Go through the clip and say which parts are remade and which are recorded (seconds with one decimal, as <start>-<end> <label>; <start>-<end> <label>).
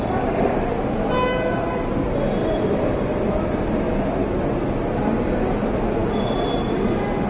0.0-2.4 recorded; 2.4-4.1 remade; 4.1-7.3 recorded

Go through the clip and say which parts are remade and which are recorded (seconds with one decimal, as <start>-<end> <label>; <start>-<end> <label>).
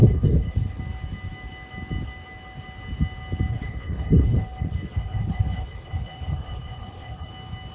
0.0-0.8 remade; 0.8-3.5 recorded; 3.5-7.3 remade; 7.3-7.7 recorded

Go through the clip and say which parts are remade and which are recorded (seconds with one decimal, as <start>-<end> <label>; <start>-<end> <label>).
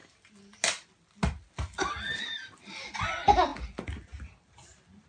0.0-5.1 recorded